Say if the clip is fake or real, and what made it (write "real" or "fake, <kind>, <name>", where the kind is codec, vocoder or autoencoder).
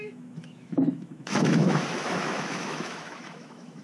fake, autoencoder, DAC-VAE